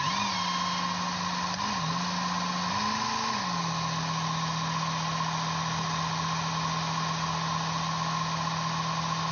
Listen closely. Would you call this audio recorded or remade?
recorded